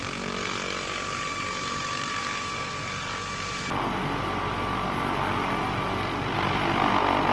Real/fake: real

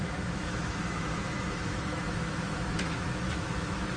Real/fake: fake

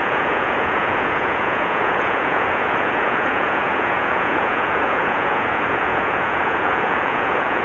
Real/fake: fake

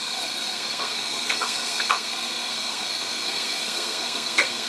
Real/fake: fake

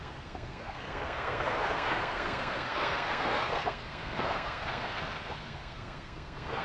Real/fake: fake